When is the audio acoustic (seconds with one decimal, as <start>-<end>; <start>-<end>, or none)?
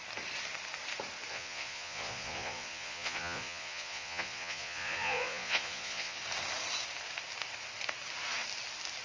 0.0-1.3; 6.2-9.0